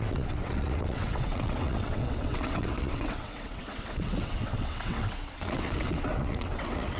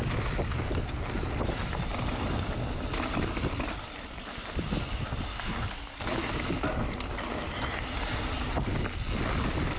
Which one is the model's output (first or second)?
first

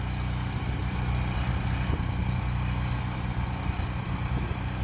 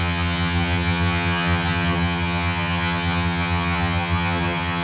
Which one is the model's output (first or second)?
second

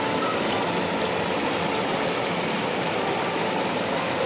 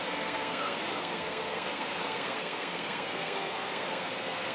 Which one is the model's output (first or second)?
second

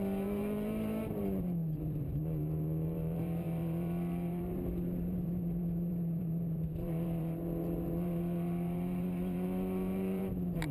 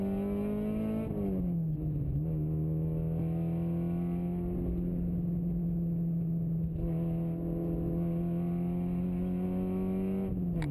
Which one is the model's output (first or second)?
first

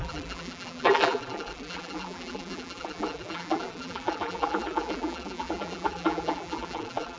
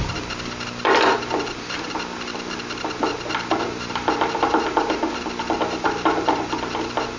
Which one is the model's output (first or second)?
first